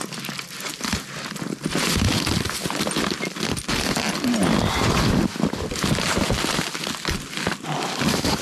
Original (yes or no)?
yes